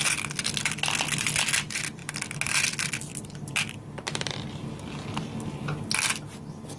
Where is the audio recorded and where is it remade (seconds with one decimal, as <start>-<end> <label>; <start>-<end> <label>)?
0.0-6.8 recorded